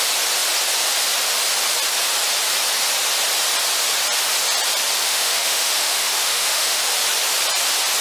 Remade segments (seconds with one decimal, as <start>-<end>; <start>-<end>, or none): 5.0-6.9